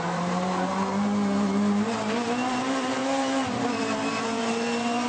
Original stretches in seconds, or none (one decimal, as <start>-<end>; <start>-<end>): 0.7-2.6; 3.0-3.8